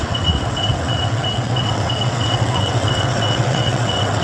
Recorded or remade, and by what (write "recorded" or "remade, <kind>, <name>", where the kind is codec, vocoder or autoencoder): remade, vocoder, WaveNeXt